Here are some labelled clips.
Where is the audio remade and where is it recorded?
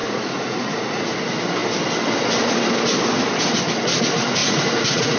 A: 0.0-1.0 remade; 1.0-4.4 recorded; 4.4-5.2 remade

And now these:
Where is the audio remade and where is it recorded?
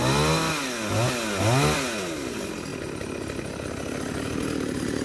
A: 0.0-5.0 recorded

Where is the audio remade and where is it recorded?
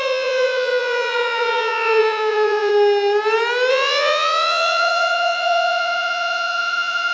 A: 0.0-2.7 remade; 2.7-3.7 recorded; 3.7-7.1 remade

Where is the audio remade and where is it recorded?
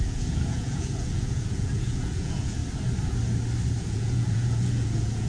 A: 0.0-2.6 remade; 2.6-3.8 recorded; 3.8-5.3 remade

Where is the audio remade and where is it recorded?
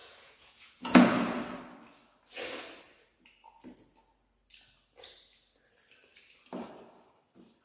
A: 0.0-1.4 remade; 1.4-7.6 recorded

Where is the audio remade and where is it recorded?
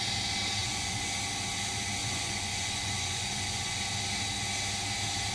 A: 0.0-0.6 recorded; 0.6-1.1 remade; 1.1-2.0 recorded; 2.0-3.8 remade; 3.8-5.3 recorded